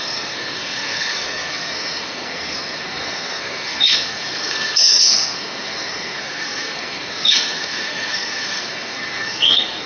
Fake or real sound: fake